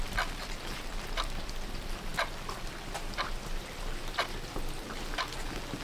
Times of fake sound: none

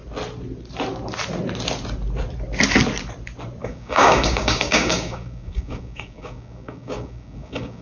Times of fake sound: 3.6-7.8

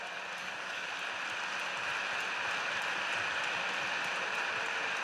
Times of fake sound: 0.4-0.9

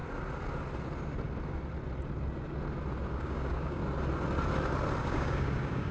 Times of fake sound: 3.1-3.8; 5.0-5.9

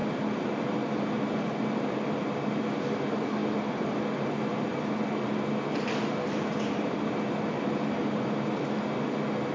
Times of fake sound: none

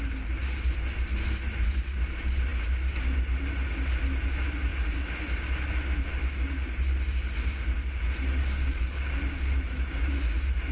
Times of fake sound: 8.4-9.1

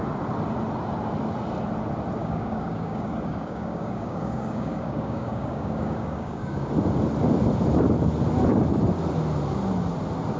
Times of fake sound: 2.2-6.7